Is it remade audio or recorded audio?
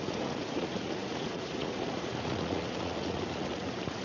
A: remade